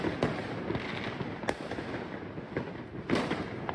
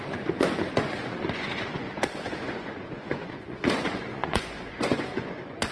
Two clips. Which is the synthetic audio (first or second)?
second